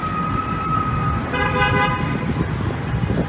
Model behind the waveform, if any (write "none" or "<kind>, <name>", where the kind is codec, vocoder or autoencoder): none